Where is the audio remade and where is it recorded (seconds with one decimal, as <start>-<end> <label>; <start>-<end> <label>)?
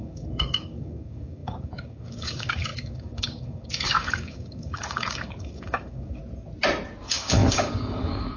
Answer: 0.0-6.2 remade; 6.2-7.0 recorded; 7.0-8.4 remade